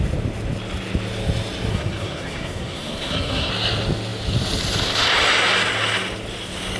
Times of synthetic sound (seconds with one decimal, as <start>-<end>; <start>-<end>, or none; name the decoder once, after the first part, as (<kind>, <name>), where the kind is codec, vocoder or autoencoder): 1.7-3.5 (codec, SNAC)